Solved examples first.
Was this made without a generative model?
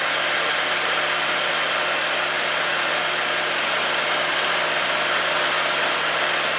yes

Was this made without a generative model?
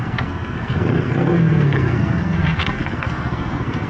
no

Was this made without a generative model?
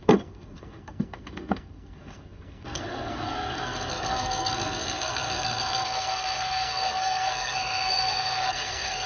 no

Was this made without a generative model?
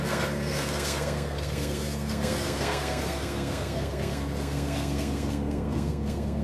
no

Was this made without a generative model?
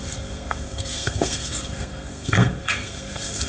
no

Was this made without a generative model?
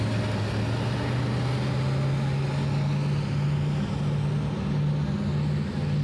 yes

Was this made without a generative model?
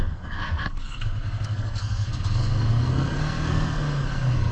no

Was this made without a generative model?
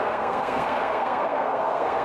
no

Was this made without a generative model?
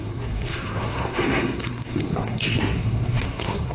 no